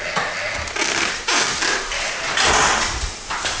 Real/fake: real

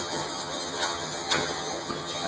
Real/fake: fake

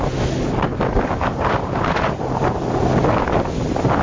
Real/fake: real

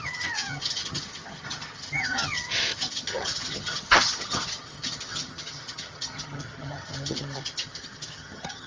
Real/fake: fake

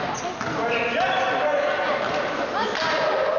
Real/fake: real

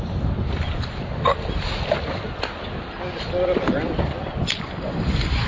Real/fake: real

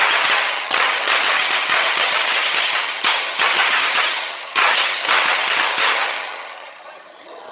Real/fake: fake